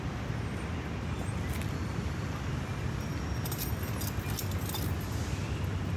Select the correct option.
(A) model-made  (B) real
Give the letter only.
B